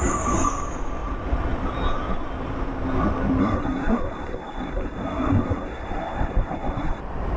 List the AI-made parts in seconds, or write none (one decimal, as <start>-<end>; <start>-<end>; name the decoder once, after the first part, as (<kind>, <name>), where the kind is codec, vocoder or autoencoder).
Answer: 3.4-7.0 (codec, SNAC)